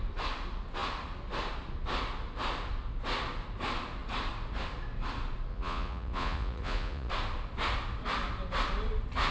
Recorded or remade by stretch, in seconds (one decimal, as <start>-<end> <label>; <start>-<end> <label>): 0.0-5.5 recorded; 5.5-7.1 remade; 7.1-9.3 recorded